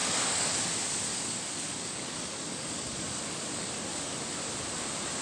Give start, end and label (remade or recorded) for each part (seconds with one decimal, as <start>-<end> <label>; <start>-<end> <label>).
0.0-0.7 remade; 0.7-1.1 recorded; 1.1-4.2 remade; 4.2-5.2 recorded

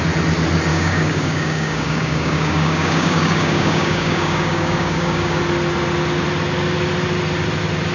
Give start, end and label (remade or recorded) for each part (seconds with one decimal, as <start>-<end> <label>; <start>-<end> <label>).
0.0-0.7 recorded; 0.7-5.4 remade; 5.4-7.9 recorded

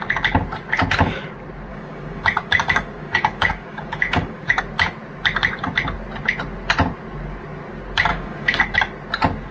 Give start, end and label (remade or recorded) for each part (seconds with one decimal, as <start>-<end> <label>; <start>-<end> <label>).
0.0-1.7 recorded; 1.7-4.6 remade; 4.6-8.1 recorded; 8.1-8.6 remade; 8.6-9.5 recorded

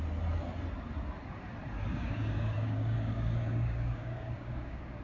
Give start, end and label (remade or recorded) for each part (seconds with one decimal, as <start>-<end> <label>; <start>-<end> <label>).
0.0-1.9 recorded; 1.9-5.0 remade

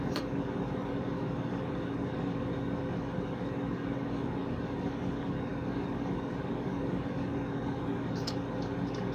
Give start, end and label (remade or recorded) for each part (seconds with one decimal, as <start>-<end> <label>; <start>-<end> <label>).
0.0-9.1 remade

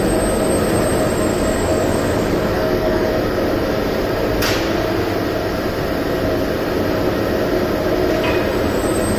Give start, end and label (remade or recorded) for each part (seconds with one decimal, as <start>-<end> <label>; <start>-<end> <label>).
0.0-1.3 recorded; 1.3-3.1 remade; 3.1-9.2 recorded

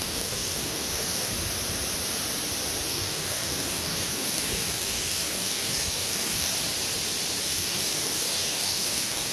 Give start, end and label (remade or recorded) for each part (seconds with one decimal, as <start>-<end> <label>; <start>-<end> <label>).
0.0-1.3 remade; 1.3-2.9 recorded; 2.9-6.5 remade; 6.5-7.4 recorded; 7.4-9.3 remade